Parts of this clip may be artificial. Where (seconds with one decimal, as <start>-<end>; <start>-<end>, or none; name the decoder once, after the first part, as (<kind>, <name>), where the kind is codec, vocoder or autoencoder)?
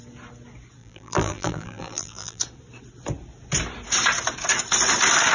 0.8-2.4 (vocoder, BigVGAN v2)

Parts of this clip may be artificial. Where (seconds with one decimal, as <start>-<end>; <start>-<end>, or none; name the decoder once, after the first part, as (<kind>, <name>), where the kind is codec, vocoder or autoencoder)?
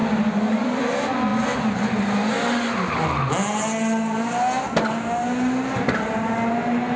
0.0-0.8 (vocoder, BigVGAN v2)